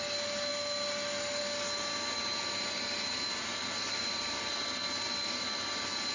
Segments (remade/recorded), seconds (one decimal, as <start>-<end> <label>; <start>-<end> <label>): 0.0-6.1 recorded